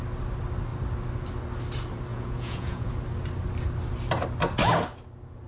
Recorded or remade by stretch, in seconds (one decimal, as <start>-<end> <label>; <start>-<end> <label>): 0.0-2.1 recorded; 2.1-2.9 remade; 2.9-5.5 recorded